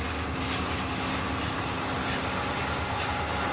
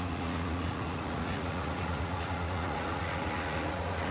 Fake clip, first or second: second